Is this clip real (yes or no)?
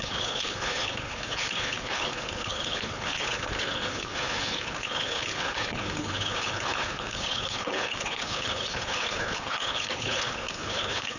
no